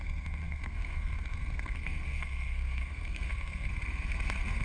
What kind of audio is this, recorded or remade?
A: remade